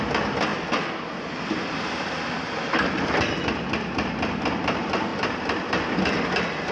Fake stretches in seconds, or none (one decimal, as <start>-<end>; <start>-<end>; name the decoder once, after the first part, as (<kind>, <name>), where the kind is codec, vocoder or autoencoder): none